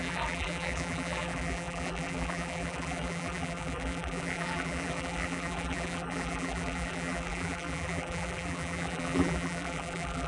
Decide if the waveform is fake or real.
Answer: fake